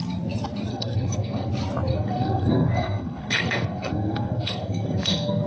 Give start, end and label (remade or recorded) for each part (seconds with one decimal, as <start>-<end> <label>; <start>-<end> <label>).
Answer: 0.0-0.7 recorded; 0.7-1.5 remade; 1.5-1.9 recorded; 1.9-5.5 remade